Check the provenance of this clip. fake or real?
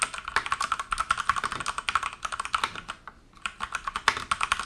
real